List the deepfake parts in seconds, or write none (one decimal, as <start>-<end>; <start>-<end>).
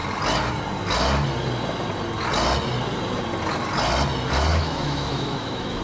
4.5-5.8